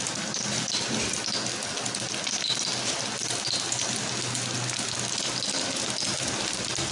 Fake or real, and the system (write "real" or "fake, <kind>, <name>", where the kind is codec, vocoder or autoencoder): real